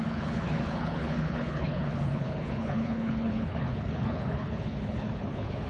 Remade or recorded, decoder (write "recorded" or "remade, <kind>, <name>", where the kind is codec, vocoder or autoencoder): remade, codec, HILCodec